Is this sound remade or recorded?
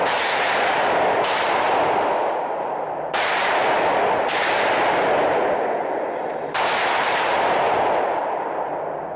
recorded